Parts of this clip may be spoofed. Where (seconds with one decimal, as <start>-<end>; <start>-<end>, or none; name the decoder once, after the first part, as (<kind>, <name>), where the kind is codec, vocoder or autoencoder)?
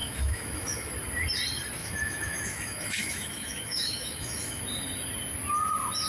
0.0-0.9 (autoencoder, DAC-VAE); 1.8-4.6